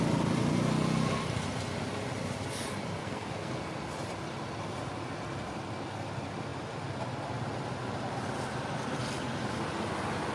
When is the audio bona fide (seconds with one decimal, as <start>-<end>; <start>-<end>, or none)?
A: 0.0-3.0; 3.6-10.3